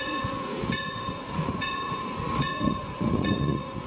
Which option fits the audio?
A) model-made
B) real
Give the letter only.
A